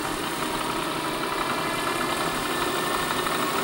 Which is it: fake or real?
real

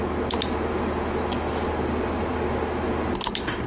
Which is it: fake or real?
real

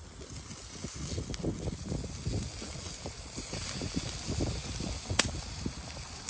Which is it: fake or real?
real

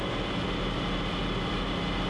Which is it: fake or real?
real